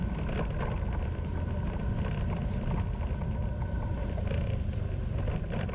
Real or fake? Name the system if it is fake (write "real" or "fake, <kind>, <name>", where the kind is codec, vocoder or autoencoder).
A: real